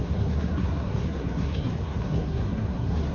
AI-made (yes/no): yes